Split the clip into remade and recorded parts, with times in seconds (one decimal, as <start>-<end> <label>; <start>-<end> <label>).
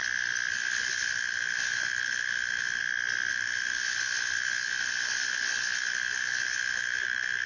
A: 0.0-0.5 recorded; 0.5-2.8 remade; 2.8-3.3 recorded; 3.3-7.5 remade